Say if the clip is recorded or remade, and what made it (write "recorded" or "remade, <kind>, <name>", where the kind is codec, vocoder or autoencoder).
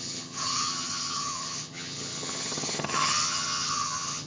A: remade, vocoder, HiFi-GAN